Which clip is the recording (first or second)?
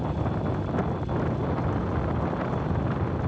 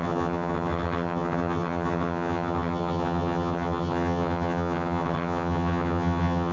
first